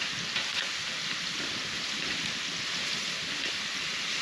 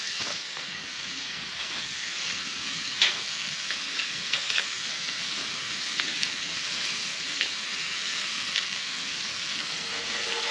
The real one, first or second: first